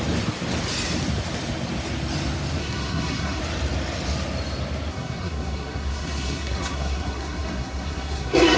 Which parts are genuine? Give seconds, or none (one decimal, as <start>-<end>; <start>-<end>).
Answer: 0.0-2.6; 3.4-4.9